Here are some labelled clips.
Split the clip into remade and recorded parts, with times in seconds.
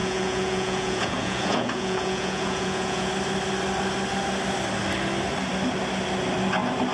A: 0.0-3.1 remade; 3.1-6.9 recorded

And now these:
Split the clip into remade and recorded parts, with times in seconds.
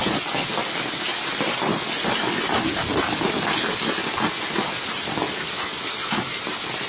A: 0.0-6.9 recorded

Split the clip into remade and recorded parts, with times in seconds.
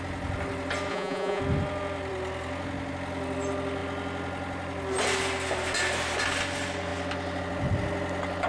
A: 0.0-0.9 recorded; 0.9-1.4 remade; 1.4-8.5 recorded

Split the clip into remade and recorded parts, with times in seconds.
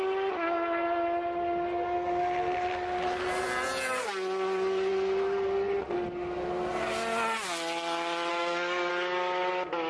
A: 0.0-8.3 recorded; 8.3-8.9 remade; 8.9-9.9 recorded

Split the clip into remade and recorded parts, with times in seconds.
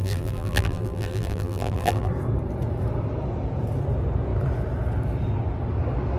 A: 0.0-2.1 remade; 2.1-6.2 recorded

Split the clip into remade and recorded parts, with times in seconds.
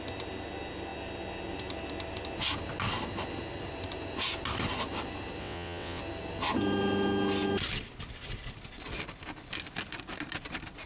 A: 0.0-5.4 recorded; 5.4-6.0 remade; 6.0-10.9 recorded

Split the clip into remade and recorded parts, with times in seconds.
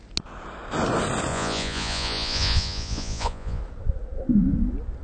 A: 0.0-1.3 recorded; 1.3-3.6 remade; 3.6-5.0 recorded